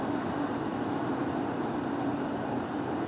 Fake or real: real